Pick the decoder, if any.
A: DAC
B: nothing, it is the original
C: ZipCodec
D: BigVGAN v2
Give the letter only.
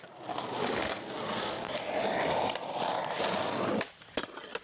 B